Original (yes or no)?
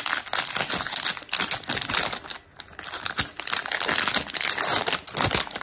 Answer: yes